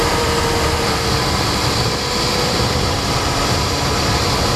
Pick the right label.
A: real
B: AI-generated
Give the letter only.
B